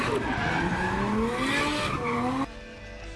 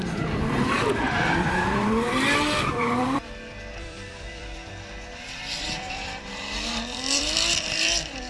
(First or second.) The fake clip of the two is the second